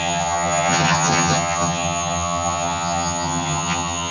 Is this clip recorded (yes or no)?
no